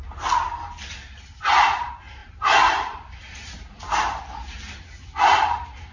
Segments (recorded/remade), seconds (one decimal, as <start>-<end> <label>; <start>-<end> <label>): 0.0-2.2 recorded; 2.2-4.2 remade; 4.2-5.9 recorded